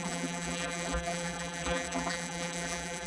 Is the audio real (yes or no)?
no